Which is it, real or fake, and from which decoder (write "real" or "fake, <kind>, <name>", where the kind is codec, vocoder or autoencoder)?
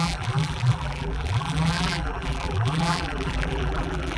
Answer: fake, vocoder, BigVGAN v2